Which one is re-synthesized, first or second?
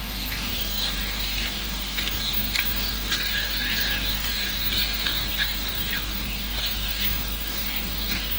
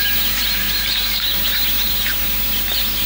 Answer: first